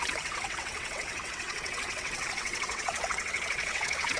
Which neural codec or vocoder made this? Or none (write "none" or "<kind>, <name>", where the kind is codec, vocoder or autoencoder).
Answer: vocoder, WaveNeXt